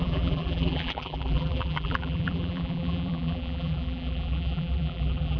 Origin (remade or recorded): remade